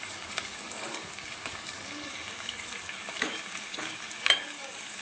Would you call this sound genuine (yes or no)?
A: no